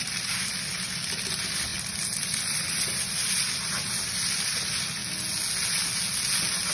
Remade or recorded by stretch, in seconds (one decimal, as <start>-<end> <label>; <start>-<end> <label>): 0.0-5.0 remade; 5.0-6.7 recorded